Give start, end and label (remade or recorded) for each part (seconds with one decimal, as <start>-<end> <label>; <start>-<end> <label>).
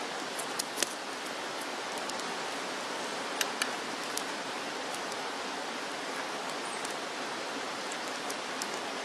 0.0-9.0 recorded